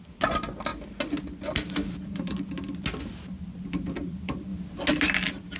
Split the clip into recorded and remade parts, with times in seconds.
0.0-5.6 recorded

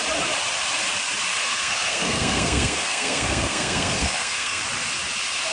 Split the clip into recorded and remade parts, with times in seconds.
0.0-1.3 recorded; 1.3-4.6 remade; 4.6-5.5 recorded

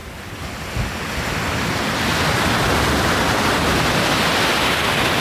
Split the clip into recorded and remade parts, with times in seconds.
0.0-5.2 recorded

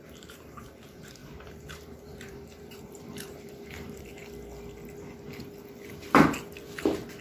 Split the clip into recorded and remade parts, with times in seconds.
0.0-4.1 remade; 4.1-7.2 recorded